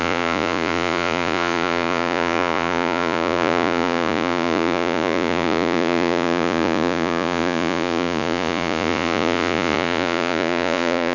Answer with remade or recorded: remade